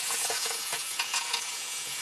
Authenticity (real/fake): fake